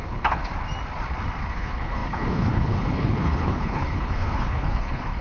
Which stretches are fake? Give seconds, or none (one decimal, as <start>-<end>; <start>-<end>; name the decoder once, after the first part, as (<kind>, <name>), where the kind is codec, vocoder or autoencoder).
0.0-0.5 (codec, HILCodec); 1.5-5.2